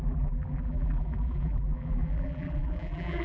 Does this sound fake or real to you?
fake